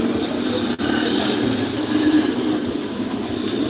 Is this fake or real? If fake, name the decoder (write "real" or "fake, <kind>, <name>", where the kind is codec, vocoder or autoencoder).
real